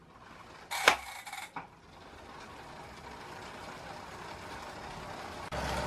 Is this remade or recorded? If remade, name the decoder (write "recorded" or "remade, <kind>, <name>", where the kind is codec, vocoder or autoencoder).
recorded